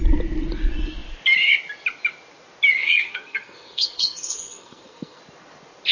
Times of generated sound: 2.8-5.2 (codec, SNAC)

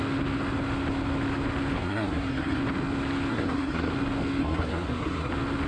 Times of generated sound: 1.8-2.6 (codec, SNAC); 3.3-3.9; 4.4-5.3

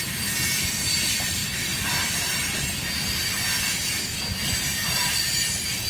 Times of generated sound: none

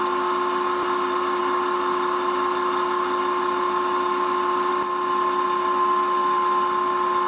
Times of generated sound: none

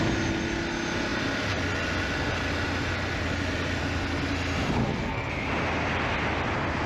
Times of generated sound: 4.8-5.3 (codec, SNAC)

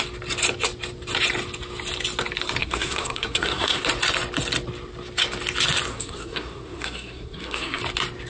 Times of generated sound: 2.6-3.8 (codec, SNAC); 5.9-7.8